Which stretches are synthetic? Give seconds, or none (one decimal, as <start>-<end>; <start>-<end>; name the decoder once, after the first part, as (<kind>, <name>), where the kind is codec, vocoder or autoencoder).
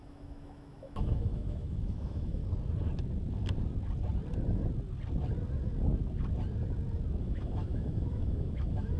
0.0-2.4 (autoencoder, DAC-VAE); 7.2-9.0